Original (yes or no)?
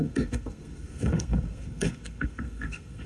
no